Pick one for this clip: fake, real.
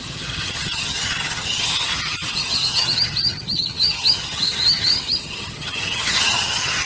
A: fake